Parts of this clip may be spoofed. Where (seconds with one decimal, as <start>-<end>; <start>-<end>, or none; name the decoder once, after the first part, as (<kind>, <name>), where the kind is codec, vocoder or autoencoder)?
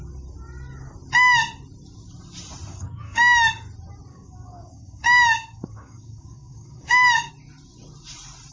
2.7-3.5 (codec, DAC); 4.1-7.3